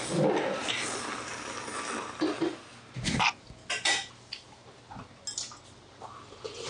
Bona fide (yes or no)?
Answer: yes